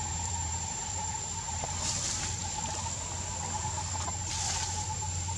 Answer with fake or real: fake